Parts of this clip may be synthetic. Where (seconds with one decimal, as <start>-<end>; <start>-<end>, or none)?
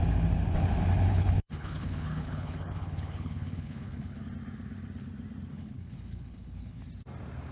1.1-4.2; 5.5-6.8